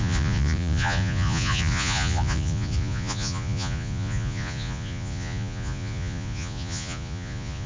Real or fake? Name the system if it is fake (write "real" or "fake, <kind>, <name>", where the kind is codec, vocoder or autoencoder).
fake, vocoder, Vocos